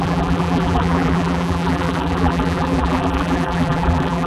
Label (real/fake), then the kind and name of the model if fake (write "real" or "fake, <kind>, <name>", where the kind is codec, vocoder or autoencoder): fake, vocoder, BigVGAN v2